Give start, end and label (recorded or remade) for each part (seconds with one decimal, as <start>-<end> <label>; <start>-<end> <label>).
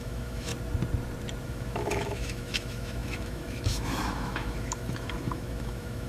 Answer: 0.0-0.5 remade; 0.5-1.4 recorded; 1.4-6.1 remade